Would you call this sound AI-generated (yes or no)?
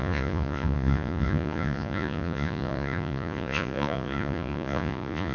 yes